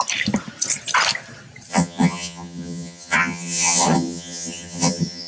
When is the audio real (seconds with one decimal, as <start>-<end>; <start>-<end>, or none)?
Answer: 0.0-1.7